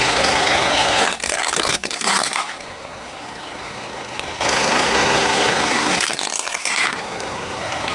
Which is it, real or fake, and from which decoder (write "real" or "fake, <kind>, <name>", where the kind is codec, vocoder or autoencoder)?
fake, codec, SNAC